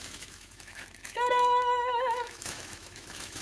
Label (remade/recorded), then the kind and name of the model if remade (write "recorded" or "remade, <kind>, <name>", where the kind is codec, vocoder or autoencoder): remade, autoencoder, DAC-VAE